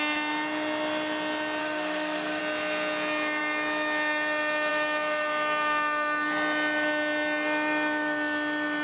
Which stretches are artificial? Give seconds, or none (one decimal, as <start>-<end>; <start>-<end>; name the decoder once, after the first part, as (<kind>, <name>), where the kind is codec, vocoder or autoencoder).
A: 1.6-2.4 (codec, SNAC)